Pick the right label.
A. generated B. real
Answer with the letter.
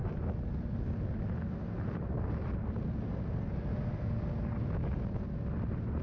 B